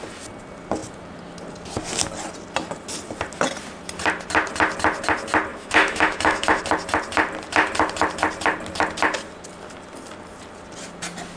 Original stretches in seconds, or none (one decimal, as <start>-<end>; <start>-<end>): 0.0-5.5; 6.6-11.4

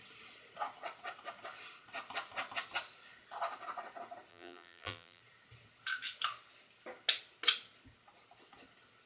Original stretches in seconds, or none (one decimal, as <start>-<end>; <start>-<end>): 0.0-4.3; 5.2-9.1

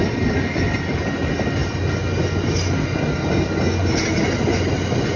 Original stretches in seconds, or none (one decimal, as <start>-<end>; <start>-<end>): 0.0-5.2

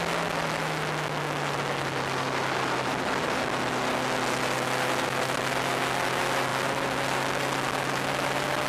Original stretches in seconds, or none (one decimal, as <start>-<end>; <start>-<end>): 0.0-8.7

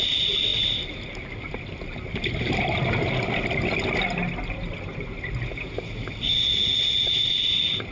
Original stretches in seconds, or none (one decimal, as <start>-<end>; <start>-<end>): 0.0-6.3; 7.1-7.9

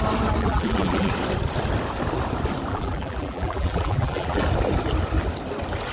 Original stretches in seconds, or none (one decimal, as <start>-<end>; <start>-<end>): 0.0-0.4; 1.1-2.7; 4.4-5.9